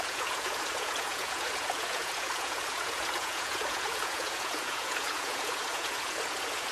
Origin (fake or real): fake